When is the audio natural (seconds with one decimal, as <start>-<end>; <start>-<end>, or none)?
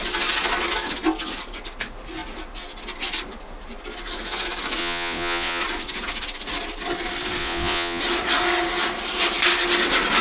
0.0-4.8; 5.6-7.4; 8.0-10.2